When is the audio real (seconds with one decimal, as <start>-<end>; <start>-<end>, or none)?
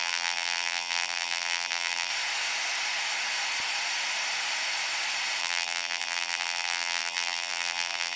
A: 2.1-5.4